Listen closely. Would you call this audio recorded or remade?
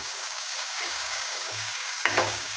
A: remade